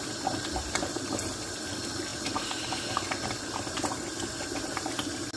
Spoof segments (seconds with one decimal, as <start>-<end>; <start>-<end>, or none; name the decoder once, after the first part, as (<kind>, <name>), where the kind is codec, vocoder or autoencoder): none